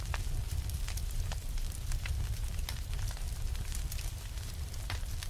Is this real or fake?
fake